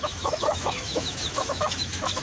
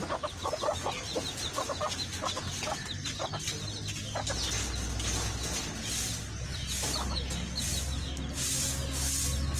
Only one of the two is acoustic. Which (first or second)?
second